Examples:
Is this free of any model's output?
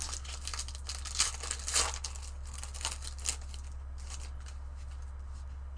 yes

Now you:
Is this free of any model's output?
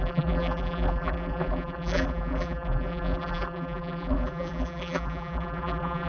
no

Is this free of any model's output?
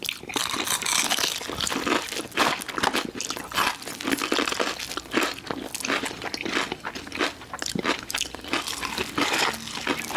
yes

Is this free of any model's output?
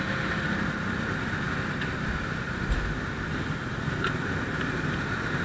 yes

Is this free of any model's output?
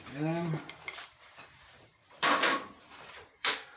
no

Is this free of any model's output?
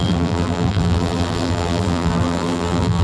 no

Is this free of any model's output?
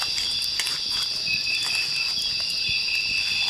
yes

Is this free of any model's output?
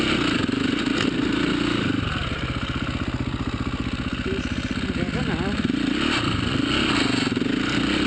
yes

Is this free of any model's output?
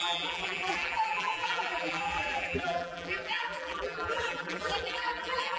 no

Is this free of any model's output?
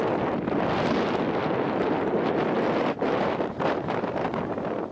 yes